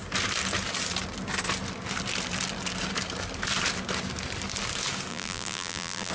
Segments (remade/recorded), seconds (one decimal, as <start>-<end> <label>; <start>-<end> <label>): 0.0-5.1 recorded; 5.1-6.1 remade